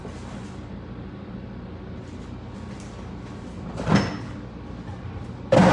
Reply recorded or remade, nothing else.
recorded